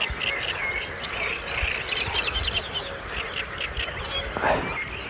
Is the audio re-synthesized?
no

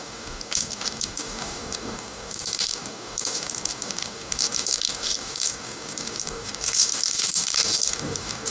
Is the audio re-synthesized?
yes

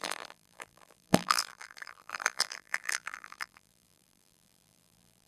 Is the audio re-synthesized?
yes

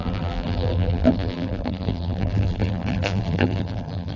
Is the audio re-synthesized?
yes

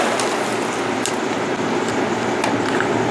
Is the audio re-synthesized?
no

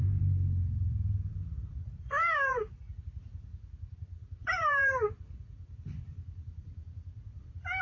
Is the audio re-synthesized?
yes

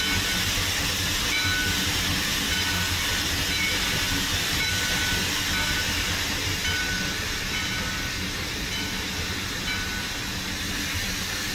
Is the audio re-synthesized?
no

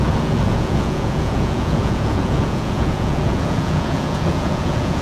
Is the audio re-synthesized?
yes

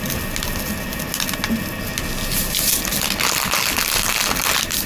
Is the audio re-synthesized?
no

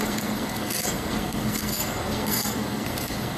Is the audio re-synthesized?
yes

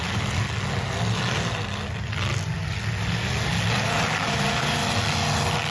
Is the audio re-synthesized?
no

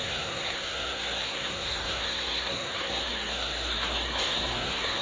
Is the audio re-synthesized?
yes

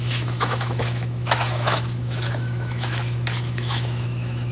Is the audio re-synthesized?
yes